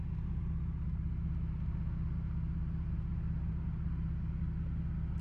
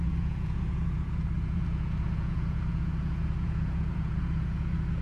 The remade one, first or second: second